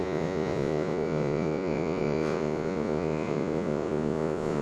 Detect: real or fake fake